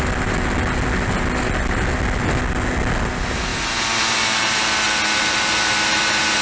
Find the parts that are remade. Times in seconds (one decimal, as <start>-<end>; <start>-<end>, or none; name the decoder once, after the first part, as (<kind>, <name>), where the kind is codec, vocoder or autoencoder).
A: none